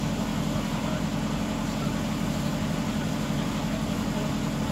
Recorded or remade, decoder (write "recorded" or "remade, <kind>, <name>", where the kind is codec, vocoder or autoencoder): recorded